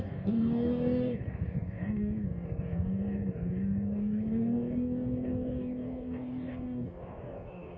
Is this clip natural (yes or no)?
no